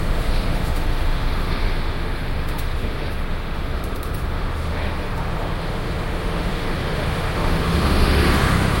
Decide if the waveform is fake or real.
fake